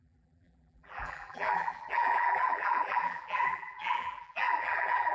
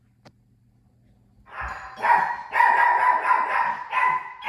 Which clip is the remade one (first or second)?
first